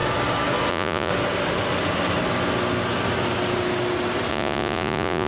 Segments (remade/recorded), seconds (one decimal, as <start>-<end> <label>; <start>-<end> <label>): 0.0-0.7 recorded; 0.7-1.1 remade; 1.1-4.3 recorded; 4.3-5.3 remade